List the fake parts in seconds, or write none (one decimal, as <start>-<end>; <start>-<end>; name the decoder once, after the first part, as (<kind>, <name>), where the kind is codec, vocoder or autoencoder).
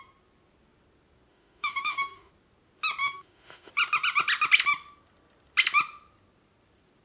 1.3-2.3 (autoencoder, DAC-VAE); 3.0-3.7